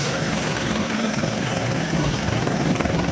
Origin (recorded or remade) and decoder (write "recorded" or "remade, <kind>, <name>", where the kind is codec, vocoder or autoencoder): remade, codec, SNAC